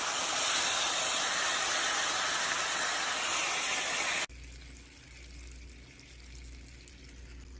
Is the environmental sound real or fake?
real